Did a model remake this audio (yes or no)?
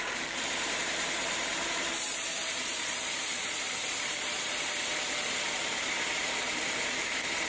yes